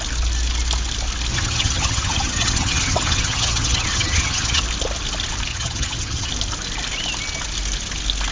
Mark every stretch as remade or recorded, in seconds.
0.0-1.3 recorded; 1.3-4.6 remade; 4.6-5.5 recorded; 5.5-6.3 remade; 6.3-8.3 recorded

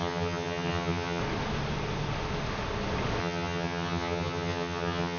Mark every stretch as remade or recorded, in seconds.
0.0-1.2 remade; 1.2-3.2 recorded; 3.2-5.2 remade

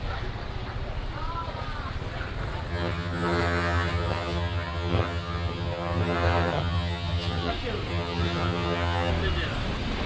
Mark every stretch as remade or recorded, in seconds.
0.0-2.7 recorded; 2.7-7.5 remade; 7.5-7.9 recorded; 7.9-9.1 remade; 9.1-10.1 recorded

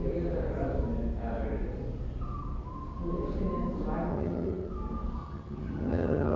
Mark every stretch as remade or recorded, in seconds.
0.0-4.1 recorded; 4.1-4.7 remade; 4.7-5.2 recorded; 5.2-6.4 remade